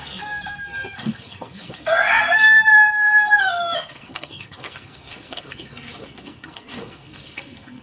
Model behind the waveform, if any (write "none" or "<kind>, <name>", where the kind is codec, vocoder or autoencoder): codec, SNAC